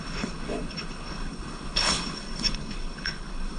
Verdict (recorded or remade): remade